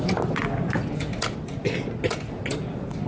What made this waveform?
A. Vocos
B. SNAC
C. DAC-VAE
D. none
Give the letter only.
D